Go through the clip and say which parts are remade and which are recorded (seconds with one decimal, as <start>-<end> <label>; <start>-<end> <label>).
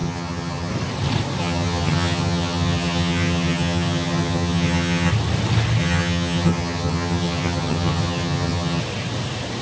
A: 0.0-0.7 remade; 0.7-1.4 recorded; 1.4-5.1 remade; 5.1-5.8 recorded; 5.8-8.8 remade; 8.8-9.6 recorded